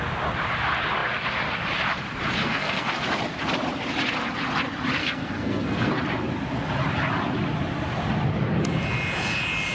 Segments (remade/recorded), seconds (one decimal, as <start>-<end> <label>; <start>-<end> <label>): 0.0-2.4 recorded; 2.4-2.9 remade; 2.9-5.0 recorded; 5.0-5.9 remade; 5.9-9.7 recorded